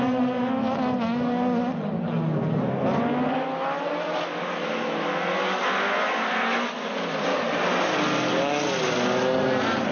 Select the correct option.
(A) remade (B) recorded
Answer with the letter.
B